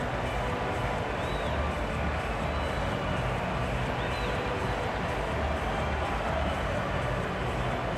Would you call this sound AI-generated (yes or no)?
no